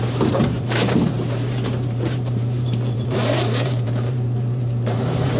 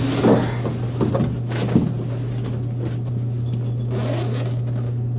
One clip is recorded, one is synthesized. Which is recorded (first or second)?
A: second